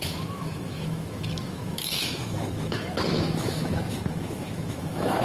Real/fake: fake